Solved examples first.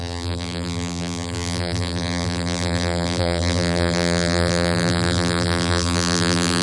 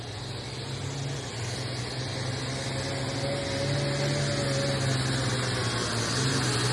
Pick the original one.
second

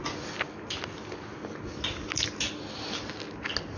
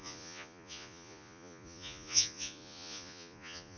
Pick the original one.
first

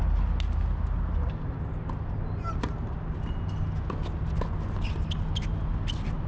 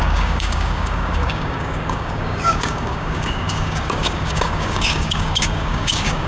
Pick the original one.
first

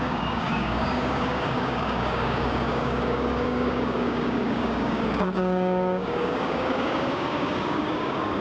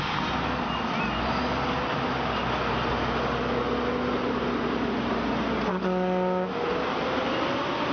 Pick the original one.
second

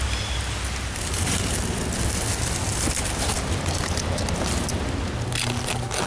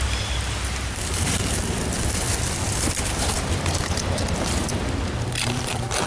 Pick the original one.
first